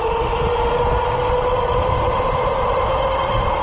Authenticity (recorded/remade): recorded